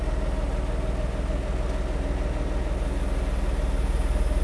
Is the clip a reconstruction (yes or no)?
no